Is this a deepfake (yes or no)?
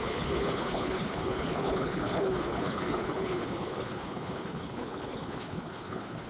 yes